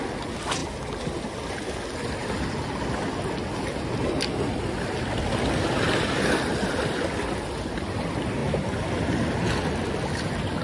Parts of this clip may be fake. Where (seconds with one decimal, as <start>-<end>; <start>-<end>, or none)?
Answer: none